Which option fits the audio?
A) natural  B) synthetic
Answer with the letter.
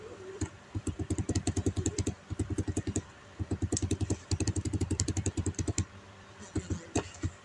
A